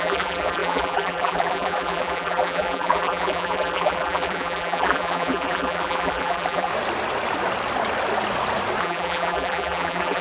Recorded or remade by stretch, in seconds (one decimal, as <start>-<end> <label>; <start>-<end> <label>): 0.0-6.7 remade; 6.7-8.8 recorded; 8.8-10.2 remade